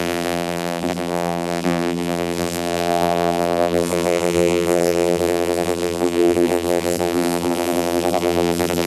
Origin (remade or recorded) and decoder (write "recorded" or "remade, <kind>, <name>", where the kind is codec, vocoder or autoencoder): remade, vocoder, BigVGAN v2